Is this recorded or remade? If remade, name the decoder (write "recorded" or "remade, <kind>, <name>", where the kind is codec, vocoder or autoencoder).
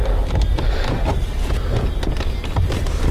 recorded